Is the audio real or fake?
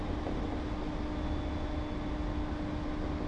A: real